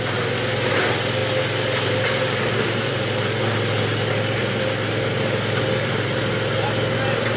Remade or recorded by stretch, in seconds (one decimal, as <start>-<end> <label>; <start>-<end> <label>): 0.0-7.4 recorded